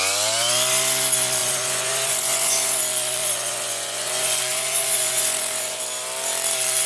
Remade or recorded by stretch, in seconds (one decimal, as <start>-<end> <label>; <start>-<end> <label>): 0.0-1.4 recorded; 1.4-2.8 remade; 2.8-3.2 recorded; 3.2-5.8 remade; 5.8-6.9 recorded